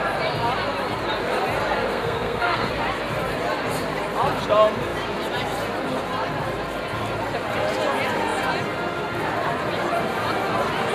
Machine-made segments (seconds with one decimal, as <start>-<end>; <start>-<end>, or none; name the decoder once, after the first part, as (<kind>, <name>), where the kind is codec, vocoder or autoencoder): 1.9-2.7 (codec, SNAC)